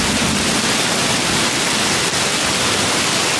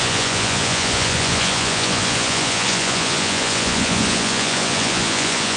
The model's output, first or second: second